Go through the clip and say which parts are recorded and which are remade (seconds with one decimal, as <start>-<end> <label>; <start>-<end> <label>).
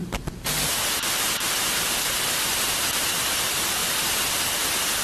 0.0-5.0 recorded